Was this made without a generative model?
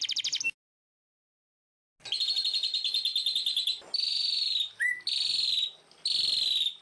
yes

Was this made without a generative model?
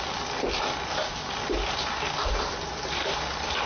no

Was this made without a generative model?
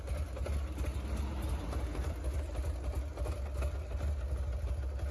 yes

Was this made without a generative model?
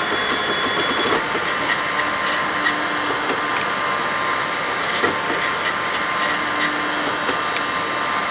yes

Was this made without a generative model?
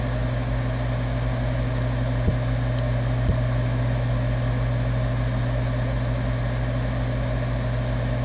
yes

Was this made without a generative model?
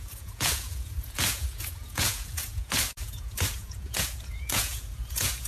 no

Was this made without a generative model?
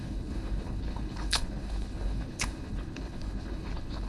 no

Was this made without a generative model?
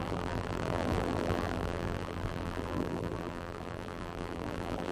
no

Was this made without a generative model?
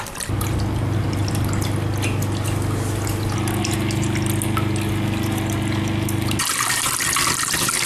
yes